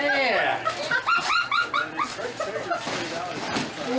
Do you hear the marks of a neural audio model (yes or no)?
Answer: no